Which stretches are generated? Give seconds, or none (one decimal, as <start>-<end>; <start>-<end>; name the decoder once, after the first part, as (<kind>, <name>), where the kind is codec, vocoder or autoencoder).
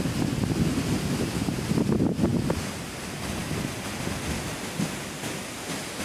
none